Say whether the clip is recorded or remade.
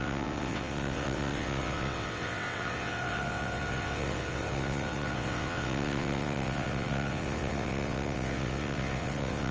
remade